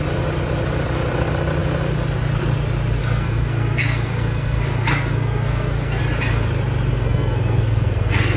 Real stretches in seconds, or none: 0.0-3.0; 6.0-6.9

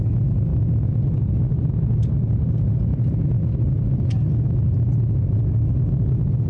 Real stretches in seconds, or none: 0.0-6.5

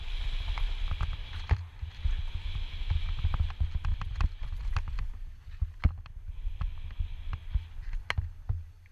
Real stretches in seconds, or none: 0.0-8.9